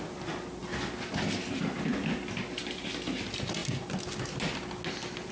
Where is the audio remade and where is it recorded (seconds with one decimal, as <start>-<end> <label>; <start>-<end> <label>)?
0.0-5.3 recorded